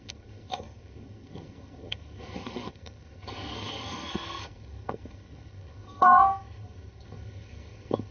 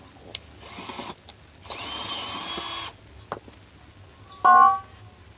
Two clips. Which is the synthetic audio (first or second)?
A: first